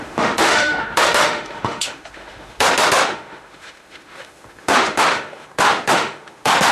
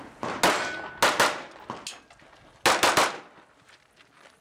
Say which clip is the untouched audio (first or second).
second